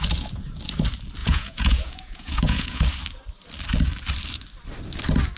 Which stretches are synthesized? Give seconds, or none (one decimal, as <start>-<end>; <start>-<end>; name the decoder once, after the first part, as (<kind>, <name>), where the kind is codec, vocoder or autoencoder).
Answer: 1.2-2.8 (vocoder, Vocos)